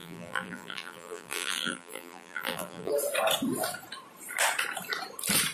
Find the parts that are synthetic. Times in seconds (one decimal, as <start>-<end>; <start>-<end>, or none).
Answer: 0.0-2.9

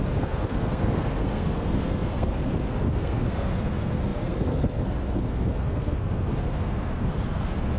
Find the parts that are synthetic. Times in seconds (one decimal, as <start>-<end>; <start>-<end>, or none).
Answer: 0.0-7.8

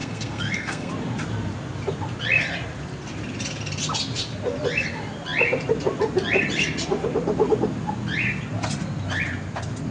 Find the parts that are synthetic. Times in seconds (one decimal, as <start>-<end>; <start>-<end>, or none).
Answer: 0.0-0.9

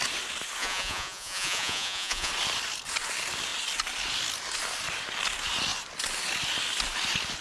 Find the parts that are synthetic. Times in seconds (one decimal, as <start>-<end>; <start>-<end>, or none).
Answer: 0.6-2.3